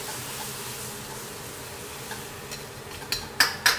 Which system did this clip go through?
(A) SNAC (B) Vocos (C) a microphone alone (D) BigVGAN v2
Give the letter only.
C